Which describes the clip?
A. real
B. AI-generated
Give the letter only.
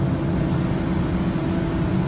A